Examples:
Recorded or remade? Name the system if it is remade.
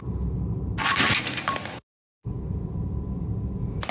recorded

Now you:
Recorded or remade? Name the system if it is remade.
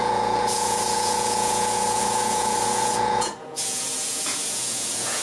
remade, vocoder, Vocos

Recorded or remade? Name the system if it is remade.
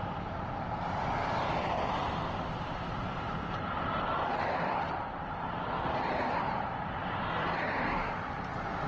remade, vocoder, BigVGAN v2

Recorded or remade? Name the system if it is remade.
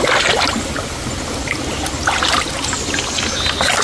recorded